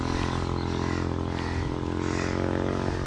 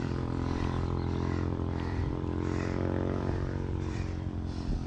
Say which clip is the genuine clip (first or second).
first